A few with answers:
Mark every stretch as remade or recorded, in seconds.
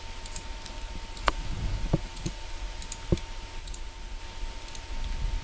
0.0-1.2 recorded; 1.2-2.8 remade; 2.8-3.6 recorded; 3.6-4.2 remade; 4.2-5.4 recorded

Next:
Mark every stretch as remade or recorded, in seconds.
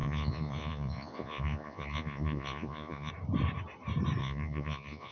0.0-3.1 remade; 3.1-4.2 recorded; 4.2-5.1 remade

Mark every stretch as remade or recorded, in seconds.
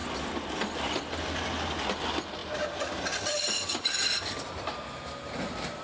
0.0-5.8 recorded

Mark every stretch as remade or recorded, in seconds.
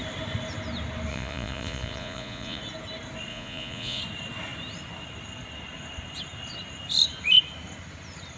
0.0-1.1 recorded; 1.1-2.6 remade; 2.6-3.3 recorded; 3.3-4.0 remade; 4.0-8.4 recorded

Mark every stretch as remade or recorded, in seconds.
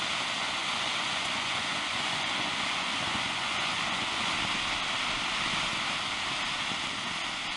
0.0-0.4 recorded; 0.4-4.3 remade; 4.3-7.6 recorded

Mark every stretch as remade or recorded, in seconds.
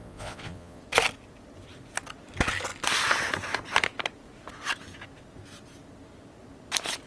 0.0-0.8 remade; 0.8-7.1 recorded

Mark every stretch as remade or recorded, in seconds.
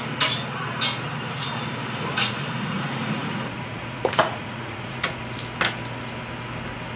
0.0-2.1 recorded; 2.1-5.2 remade; 5.2-7.0 recorded